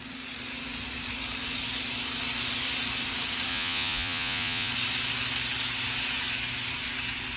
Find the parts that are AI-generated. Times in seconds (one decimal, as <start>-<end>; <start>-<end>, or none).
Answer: 3.5-4.7